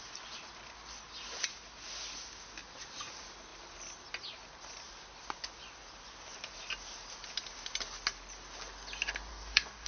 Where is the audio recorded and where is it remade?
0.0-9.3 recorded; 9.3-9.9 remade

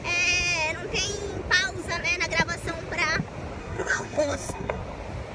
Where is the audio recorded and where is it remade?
0.0-3.6 recorded; 3.6-4.8 remade; 4.8-5.3 recorded

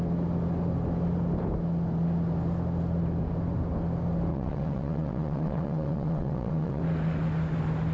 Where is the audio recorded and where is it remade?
0.0-4.3 recorded; 4.3-6.8 remade; 6.8-7.9 recorded

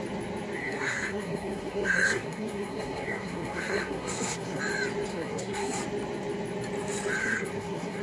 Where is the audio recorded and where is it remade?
0.0-0.6 recorded; 0.6-4.6 remade; 4.6-5.1 recorded; 5.1-5.8 remade; 5.8-7.2 recorded; 7.2-8.0 remade

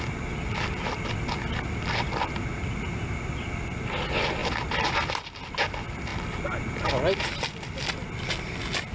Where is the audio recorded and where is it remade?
0.0-4.4 recorded; 4.4-5.2 remade; 5.2-8.9 recorded

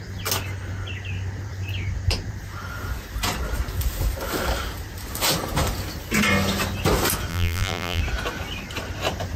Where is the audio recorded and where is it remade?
0.0-7.3 recorded; 7.3-8.0 remade; 8.0-9.4 recorded